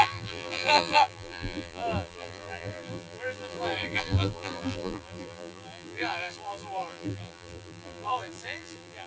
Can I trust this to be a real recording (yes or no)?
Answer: no